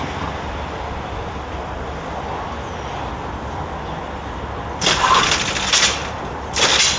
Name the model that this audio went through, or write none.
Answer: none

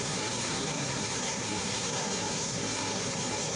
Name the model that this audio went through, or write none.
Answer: codec, SNAC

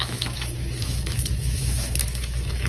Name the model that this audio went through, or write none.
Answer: autoencoder, DAC-VAE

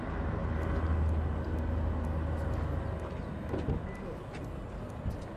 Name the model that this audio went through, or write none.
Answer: none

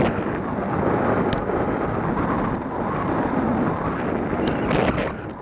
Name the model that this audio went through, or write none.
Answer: none